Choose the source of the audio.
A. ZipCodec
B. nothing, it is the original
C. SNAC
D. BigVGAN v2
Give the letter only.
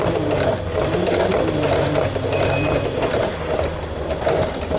B